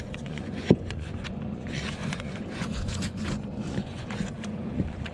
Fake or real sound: fake